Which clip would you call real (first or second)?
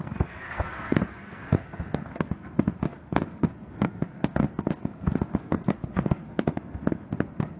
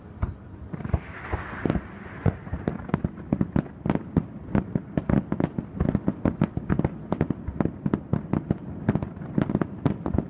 second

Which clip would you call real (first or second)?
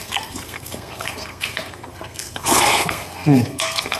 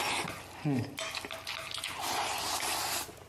second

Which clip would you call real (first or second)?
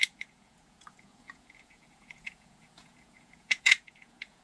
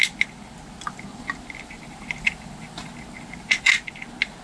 second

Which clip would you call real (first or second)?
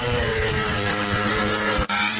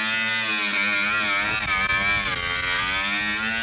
second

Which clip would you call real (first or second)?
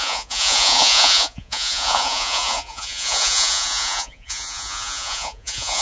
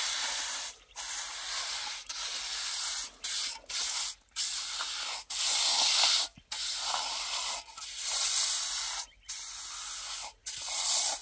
second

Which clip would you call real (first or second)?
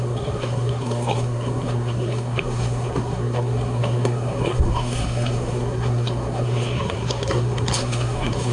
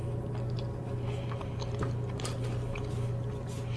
second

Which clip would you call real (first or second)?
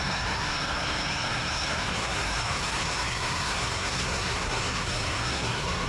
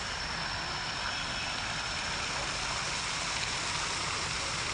second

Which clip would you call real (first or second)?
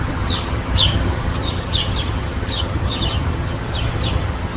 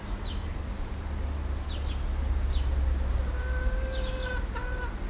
second